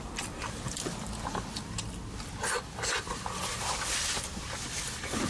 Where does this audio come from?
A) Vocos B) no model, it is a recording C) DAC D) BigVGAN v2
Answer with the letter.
B